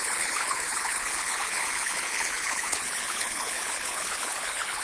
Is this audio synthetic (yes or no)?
yes